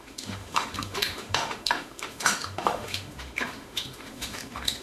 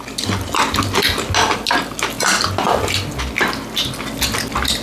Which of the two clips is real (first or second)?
second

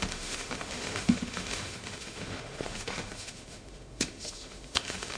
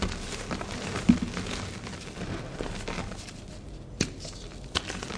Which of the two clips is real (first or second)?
second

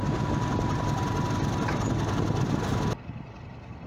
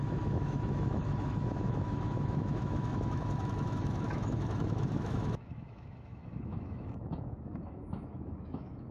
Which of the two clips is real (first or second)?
first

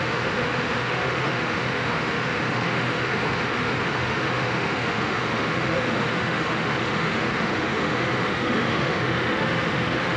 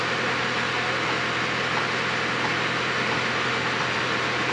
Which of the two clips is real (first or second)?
second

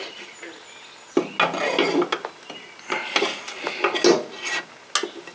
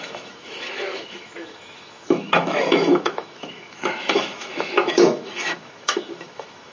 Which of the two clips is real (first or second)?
first